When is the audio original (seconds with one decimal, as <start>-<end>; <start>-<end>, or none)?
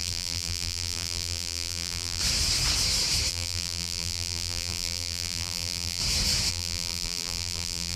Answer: 2.2-3.3; 6.0-6.5